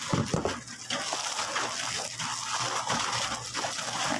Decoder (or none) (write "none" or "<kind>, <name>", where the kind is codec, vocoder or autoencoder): none